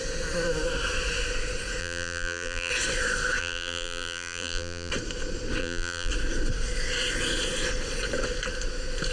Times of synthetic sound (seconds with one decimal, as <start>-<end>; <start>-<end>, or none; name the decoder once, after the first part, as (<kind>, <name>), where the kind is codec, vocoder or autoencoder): 1.8-2.7 (vocoder, BigVGAN v2); 3.4-4.9; 5.6-6.1

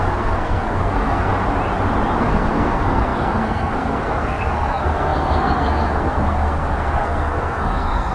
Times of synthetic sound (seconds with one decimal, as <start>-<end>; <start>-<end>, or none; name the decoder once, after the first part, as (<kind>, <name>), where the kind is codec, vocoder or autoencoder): 0.0-1.3 (codec, SNAC); 2.2-8.1

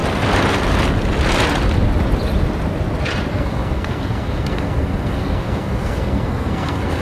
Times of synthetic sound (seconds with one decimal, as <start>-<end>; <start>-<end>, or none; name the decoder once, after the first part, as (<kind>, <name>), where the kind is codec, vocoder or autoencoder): 3.3-7.0 (codec, SNAC)

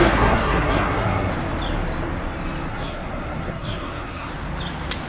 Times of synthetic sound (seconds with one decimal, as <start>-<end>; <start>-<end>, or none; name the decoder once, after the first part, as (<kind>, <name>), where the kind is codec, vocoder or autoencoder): 0.0-1.3 (codec, SNAC); 2.7-4.3